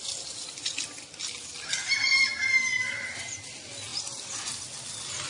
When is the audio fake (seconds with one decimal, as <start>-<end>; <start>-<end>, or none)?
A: none

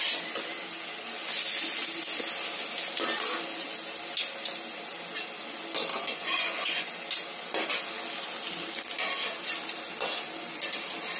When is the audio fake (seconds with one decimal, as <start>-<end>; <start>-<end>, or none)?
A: 5.9-6.9